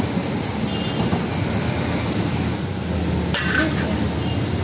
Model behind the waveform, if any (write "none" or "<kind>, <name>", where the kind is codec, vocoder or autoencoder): none